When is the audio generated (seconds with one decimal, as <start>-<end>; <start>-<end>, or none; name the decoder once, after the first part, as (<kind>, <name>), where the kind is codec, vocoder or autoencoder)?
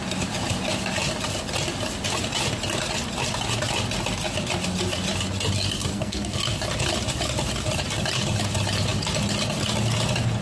5.9-6.4 (codec, SNAC)